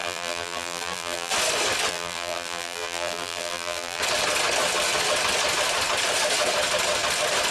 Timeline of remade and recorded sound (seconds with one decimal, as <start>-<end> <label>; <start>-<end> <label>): 0.0-1.3 remade; 1.3-1.9 recorded; 1.9-4.0 remade; 4.0-7.5 recorded